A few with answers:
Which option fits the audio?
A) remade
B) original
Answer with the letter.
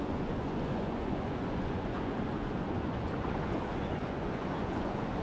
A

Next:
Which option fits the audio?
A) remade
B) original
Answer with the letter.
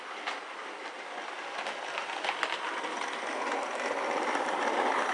B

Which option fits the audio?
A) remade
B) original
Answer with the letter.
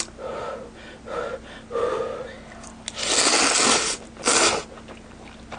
B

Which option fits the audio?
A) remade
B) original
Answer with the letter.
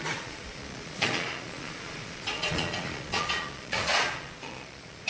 A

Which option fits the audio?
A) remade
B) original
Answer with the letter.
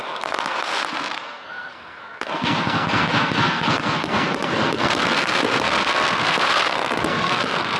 A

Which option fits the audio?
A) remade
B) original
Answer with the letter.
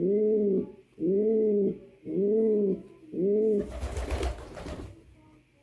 B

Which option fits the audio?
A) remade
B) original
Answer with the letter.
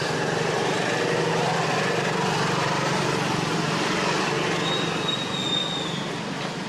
B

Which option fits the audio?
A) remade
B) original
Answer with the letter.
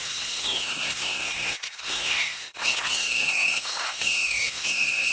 A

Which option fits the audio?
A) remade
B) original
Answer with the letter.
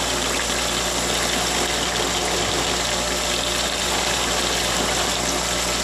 B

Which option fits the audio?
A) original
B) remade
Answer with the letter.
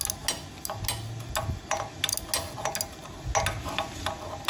A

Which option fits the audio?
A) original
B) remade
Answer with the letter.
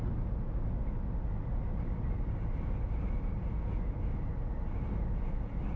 A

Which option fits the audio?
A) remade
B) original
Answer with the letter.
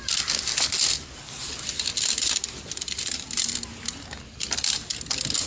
B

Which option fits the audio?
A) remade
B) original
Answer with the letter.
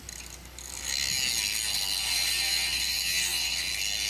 B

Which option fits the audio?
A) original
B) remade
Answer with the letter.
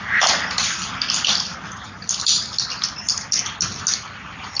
A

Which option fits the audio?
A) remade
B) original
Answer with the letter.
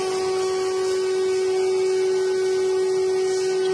B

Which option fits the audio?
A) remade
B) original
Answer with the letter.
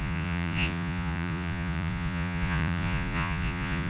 A